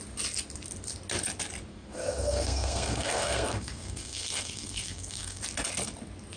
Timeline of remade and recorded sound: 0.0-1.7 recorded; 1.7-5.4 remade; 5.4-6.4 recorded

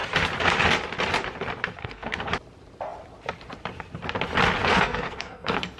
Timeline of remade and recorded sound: 0.0-1.8 recorded; 1.8-2.3 remade; 2.3-4.6 recorded; 4.6-5.8 remade